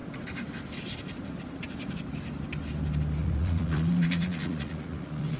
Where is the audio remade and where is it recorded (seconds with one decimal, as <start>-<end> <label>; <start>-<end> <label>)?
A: 0.0-3.2 recorded; 3.2-5.4 remade